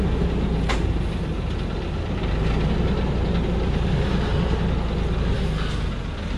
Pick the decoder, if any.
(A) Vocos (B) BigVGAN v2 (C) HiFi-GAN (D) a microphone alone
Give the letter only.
D